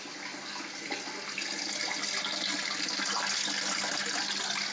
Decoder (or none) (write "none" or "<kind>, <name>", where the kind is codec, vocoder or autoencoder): none